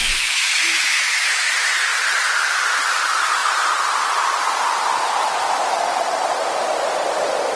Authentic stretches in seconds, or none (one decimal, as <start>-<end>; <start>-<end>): 1.5-7.6